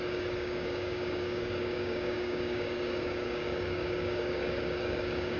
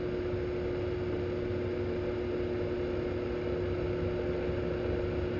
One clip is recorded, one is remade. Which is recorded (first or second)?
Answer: second